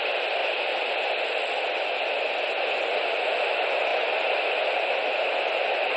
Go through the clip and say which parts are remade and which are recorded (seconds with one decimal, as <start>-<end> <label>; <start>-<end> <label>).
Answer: 0.0-6.0 recorded